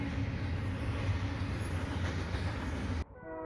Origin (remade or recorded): recorded